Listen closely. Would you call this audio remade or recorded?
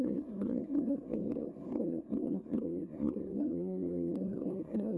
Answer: remade